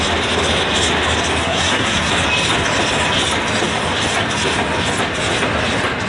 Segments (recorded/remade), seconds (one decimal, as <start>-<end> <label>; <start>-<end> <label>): 0.0-1.4 recorded; 1.4-2.1 remade; 2.1-6.1 recorded